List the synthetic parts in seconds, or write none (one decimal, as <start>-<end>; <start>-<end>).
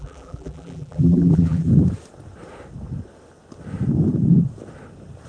0.0-1.7